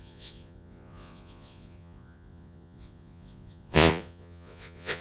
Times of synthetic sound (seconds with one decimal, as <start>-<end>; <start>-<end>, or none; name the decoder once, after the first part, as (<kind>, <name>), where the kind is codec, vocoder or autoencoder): 0.0-5.0 (vocoder, Vocos)